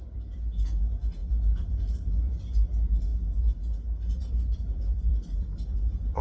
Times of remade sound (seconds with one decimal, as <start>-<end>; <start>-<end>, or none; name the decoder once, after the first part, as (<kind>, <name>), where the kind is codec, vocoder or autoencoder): 0.0-3.1 (vocoder, BigVGAN v2); 4.2-6.2